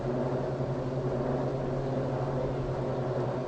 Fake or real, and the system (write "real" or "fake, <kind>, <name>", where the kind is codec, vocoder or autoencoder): real